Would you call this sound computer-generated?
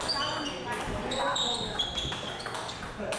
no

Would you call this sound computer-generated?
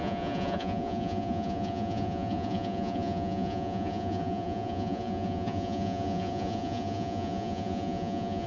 yes